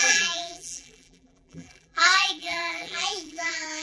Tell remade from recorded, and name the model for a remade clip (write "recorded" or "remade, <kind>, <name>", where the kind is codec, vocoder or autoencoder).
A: remade, vocoder, BigVGAN v2